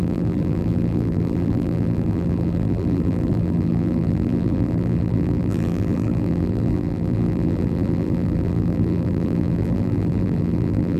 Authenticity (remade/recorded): remade